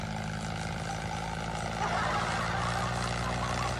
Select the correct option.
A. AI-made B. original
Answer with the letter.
B